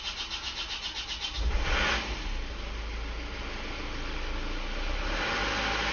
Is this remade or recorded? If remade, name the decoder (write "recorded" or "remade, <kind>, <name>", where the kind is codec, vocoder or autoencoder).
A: recorded